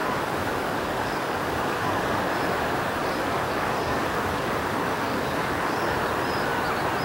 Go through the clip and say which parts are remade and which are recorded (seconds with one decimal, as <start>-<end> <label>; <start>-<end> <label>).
0.0-2.3 remade; 2.3-3.0 recorded; 3.0-5.9 remade; 5.9-7.0 recorded